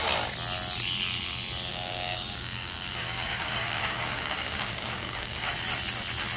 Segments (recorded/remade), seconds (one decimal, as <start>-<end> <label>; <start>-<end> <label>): 0.0-1.7 recorded; 1.7-5.5 remade; 5.5-6.4 recorded